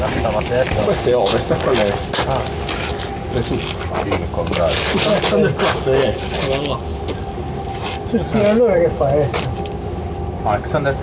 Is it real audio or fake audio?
real